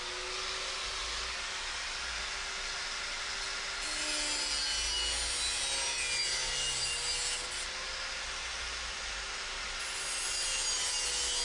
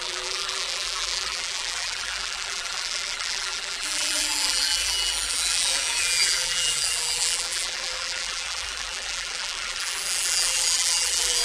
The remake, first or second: second